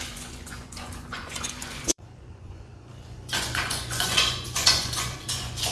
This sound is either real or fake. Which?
fake